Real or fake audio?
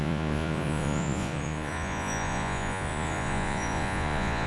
fake